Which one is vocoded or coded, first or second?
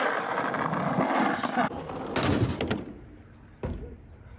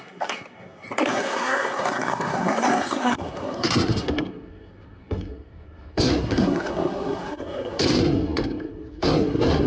second